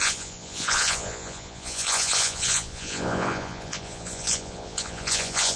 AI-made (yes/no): yes